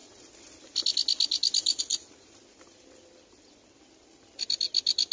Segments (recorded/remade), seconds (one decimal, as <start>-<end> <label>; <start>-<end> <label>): 0.0-5.1 recorded